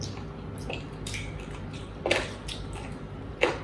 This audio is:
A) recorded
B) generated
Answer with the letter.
A